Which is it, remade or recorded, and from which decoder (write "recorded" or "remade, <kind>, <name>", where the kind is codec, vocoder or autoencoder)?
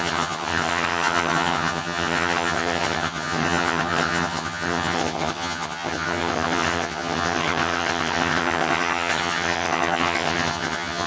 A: remade, vocoder, HiFi-GAN